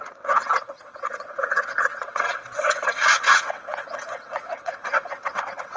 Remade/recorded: remade